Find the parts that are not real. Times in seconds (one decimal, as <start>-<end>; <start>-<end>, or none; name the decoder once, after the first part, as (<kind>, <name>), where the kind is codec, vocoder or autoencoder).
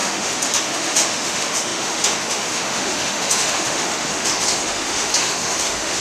0.0-6.0 (autoencoder, DAC-VAE)